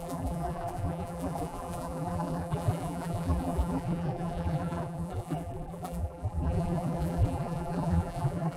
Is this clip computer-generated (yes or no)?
yes